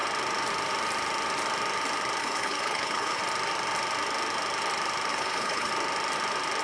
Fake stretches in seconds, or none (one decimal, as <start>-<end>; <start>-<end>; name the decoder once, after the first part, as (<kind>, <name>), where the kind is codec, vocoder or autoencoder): 2.2-3.2 (codec, HILCodec); 5.1-5.7